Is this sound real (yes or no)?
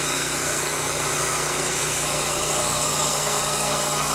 no